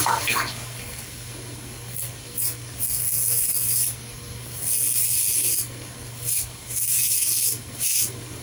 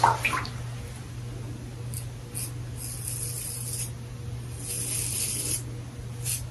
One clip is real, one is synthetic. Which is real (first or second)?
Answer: second